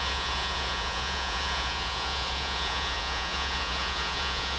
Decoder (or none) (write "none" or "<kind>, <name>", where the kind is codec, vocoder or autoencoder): vocoder, Vocos